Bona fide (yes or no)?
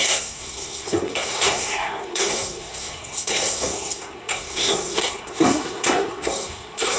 no